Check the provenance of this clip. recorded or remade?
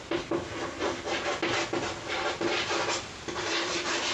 recorded